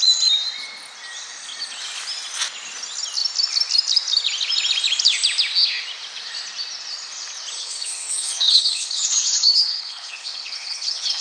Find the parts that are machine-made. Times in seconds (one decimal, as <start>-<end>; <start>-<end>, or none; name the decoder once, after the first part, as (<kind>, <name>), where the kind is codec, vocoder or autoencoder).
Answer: 7.6-11.2 (codec, HILCodec)

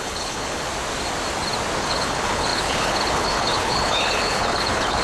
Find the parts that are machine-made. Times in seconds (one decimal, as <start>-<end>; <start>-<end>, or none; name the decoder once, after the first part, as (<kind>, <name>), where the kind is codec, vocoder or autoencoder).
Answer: 0.0-0.7 (codec, HILCodec); 1.8-5.0

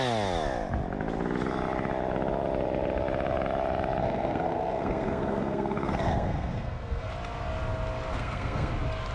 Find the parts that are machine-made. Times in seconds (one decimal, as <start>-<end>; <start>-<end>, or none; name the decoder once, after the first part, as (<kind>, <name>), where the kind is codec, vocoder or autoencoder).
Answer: 4.0-7.1 (codec, SNAC); 8.1-8.7